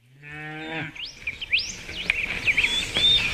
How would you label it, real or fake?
real